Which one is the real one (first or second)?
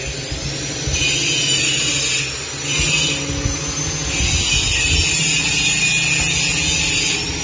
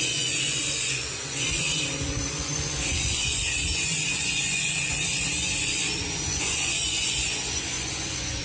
first